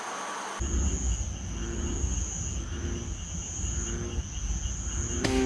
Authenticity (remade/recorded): recorded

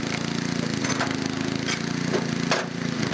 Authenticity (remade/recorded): recorded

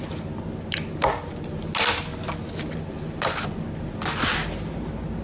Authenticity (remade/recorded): recorded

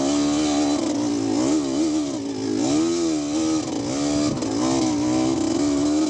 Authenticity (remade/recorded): recorded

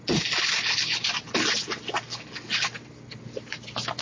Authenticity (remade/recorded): recorded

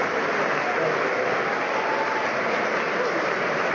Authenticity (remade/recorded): recorded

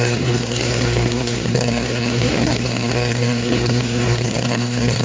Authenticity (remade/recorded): remade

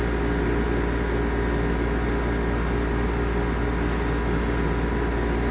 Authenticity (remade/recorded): recorded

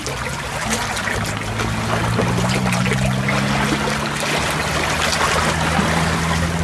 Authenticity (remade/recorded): recorded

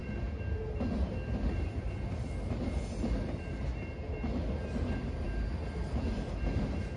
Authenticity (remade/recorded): recorded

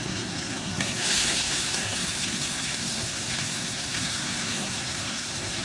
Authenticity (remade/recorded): remade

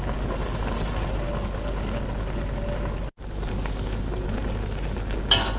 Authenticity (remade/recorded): recorded